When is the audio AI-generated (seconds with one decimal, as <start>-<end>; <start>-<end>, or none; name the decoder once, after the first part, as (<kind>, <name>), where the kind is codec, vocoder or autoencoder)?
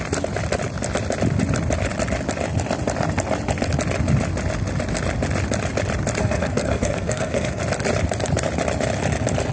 6.2-7.6 (codec, SNAC)